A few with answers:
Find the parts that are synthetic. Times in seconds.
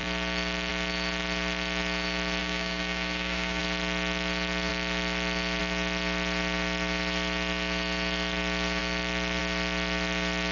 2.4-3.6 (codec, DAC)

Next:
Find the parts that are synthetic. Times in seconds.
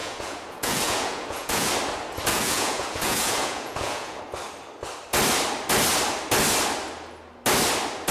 0.0-1.7 (vocoder, Vocos); 2.3-4.2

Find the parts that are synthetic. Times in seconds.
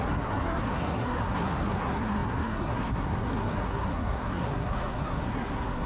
0.0-5.9 (codec, SNAC)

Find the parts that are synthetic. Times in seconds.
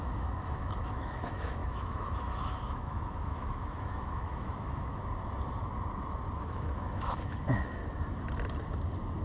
0.0-5.0 (autoencoder, DAC-VAE); 6.5-7.8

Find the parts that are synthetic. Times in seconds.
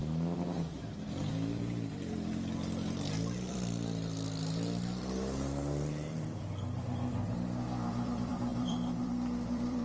1.3-9.8 (vocoder, BigVGAN v2)